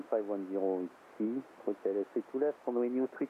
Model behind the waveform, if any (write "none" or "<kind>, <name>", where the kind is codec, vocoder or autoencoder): none